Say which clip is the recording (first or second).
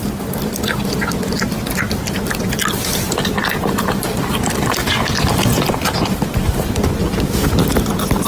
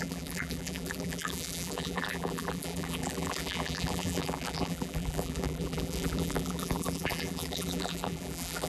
first